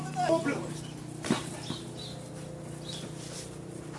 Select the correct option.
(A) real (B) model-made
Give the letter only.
A